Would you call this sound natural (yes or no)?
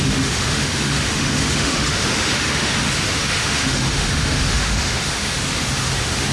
no